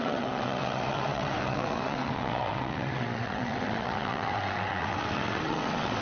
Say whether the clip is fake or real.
fake